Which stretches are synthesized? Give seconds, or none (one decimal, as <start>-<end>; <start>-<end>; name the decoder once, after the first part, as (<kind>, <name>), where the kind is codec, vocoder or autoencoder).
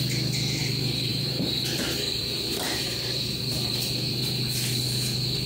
1.1-4.4 (vocoder, BigVGAN v2)